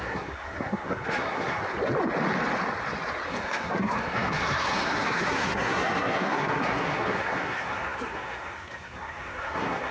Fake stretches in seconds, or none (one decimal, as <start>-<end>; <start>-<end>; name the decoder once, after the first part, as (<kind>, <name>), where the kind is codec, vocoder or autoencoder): 0.0-1.6 (codec, SNAC); 3.3-9.9